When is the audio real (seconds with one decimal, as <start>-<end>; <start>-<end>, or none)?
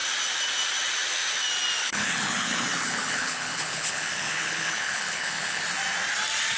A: 0.0-1.8; 5.6-6.6